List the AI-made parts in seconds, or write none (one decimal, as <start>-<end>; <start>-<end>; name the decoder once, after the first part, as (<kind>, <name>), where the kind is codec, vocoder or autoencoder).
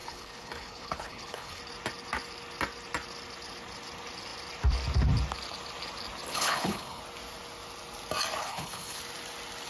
0.0-1.6 (codec, HILCodec); 6.3-7.0; 8.4-9.0